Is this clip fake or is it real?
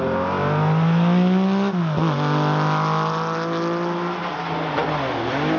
real